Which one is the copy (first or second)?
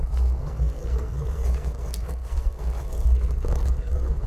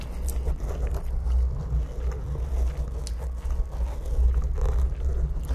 first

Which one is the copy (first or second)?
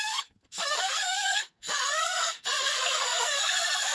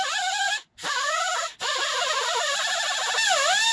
first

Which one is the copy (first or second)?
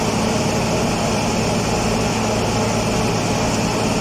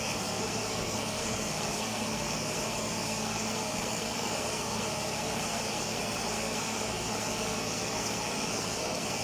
second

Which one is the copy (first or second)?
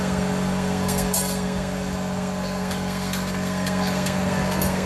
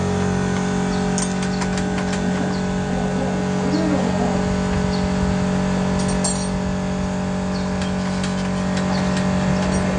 first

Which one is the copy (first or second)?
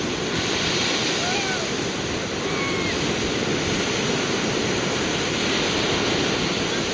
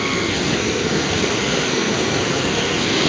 second